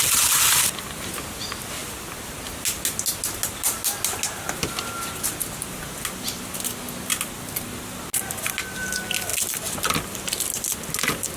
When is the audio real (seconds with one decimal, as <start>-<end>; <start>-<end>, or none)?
0.0-11.4